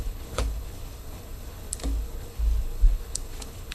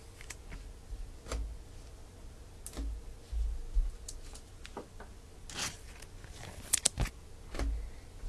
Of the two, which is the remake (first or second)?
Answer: first